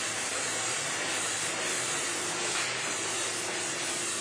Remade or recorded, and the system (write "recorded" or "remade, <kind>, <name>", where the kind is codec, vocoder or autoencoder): recorded